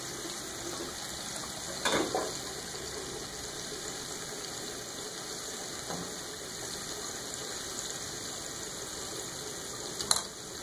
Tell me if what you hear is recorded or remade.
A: recorded